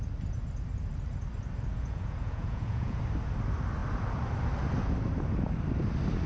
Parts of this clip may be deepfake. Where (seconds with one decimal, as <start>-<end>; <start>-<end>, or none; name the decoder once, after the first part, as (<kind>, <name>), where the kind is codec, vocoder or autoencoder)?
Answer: 1.7-3.0 (vocoder, Vocos)